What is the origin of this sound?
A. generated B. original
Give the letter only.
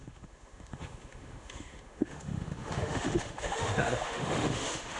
A